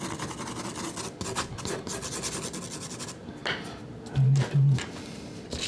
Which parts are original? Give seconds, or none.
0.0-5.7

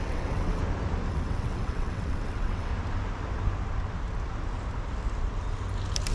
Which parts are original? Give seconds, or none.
0.6-1.1; 2.7-6.1